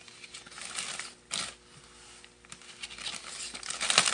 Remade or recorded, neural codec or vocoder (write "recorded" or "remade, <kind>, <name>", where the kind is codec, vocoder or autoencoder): recorded